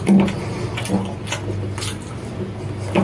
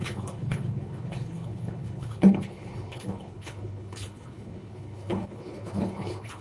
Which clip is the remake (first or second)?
second